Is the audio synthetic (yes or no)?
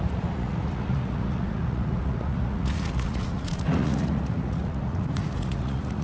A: yes